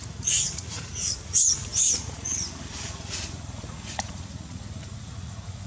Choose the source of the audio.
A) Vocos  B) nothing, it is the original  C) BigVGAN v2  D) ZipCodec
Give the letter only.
A